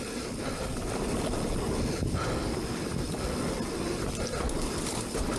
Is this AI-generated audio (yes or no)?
no